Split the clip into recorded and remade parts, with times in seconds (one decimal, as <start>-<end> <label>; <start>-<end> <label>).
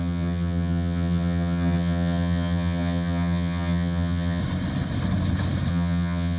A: 0.0-4.4 remade; 4.4-5.7 recorded; 5.7-6.4 remade